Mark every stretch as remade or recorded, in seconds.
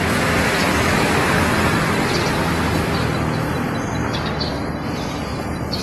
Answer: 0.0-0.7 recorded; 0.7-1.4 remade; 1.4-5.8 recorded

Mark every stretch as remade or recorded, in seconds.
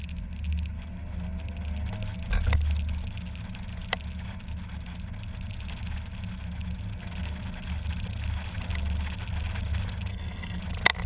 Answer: 0.0-10.1 recorded; 10.1-10.6 remade; 10.6-11.1 recorded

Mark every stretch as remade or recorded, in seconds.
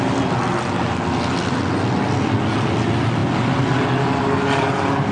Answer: 0.0-5.1 recorded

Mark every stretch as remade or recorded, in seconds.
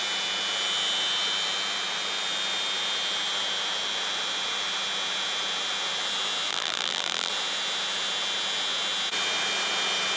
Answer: 0.0-6.5 recorded; 6.5-7.3 remade; 7.3-10.2 recorded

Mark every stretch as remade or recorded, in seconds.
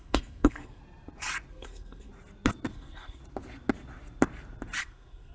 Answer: 0.0-0.8 remade; 0.8-1.5 recorded; 1.5-2.1 remade; 2.1-2.7 recorded; 2.7-3.2 remade; 3.2-4.8 recorded; 4.8-5.3 remade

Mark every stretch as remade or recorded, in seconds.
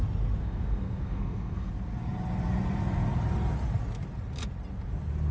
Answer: 0.0-0.4 recorded; 0.4-1.7 remade; 1.7-5.3 recorded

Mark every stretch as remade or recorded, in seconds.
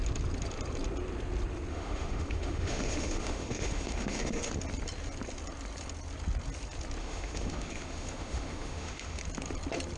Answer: 0.0-1.7 recorded; 1.7-4.5 remade; 4.5-7.0 recorded; 7.0-9.2 remade; 9.2-10.0 recorded